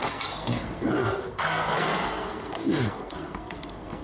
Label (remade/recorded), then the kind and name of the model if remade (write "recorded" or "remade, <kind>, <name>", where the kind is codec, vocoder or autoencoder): remade, codec, SNAC